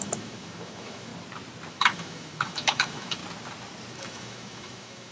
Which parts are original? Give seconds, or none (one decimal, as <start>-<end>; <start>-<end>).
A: 1.1-1.7; 3.2-3.9